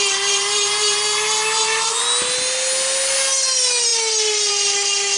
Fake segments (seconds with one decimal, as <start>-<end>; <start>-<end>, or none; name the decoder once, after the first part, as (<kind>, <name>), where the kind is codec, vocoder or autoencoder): none